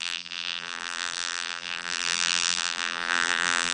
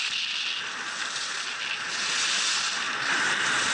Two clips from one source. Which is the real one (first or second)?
second